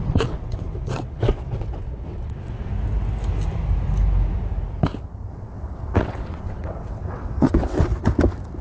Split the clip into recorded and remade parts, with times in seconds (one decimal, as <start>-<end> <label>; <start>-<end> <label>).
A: 0.0-2.7 remade; 2.7-5.3 recorded; 5.3-7.9 remade; 7.9-8.6 recorded